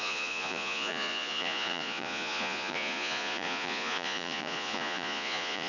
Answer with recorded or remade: remade